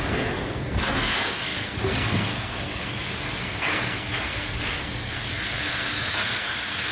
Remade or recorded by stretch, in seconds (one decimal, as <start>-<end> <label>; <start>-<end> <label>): 0.0-6.9 remade